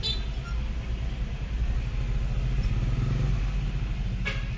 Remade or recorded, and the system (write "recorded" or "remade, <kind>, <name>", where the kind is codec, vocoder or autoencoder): recorded